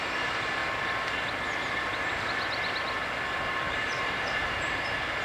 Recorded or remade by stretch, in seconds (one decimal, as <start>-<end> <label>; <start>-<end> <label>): 0.0-0.6 remade; 0.6-3.7 recorded; 3.7-5.2 remade